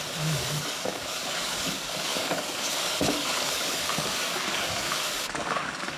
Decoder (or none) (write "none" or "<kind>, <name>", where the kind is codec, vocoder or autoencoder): codec, DAC